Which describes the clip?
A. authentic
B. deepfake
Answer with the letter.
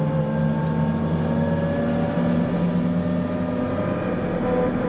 A